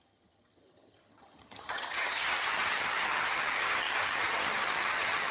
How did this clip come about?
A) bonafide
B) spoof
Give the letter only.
B